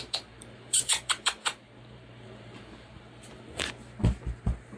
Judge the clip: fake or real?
fake